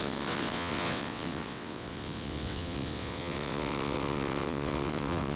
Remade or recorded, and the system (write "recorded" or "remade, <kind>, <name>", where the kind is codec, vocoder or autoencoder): remade, vocoder, WaveNeXt